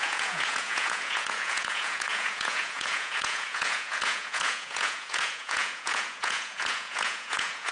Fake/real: fake